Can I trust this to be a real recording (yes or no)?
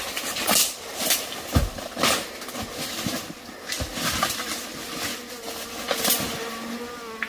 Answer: yes